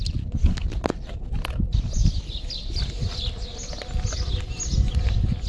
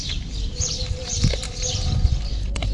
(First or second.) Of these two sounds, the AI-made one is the second